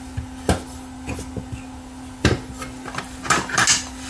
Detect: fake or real real